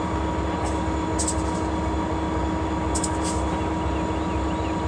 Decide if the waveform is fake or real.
real